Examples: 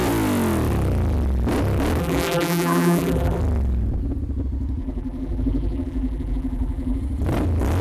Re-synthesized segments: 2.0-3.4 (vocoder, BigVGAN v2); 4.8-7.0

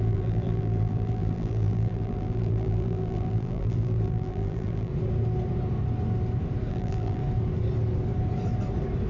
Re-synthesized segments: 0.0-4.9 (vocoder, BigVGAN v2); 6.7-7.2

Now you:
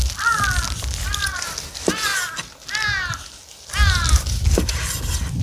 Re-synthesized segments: 1.2-1.7 (vocoder, BigVGAN v2)

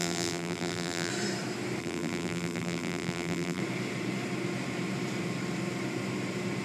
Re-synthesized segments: 0.0-1.1 (vocoder, BigVGAN v2); 1.8-3.6

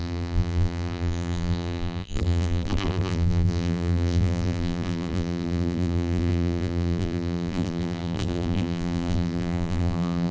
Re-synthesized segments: 0.0-10.3 (vocoder, BigVGAN v2)